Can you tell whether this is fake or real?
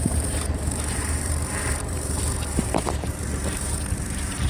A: fake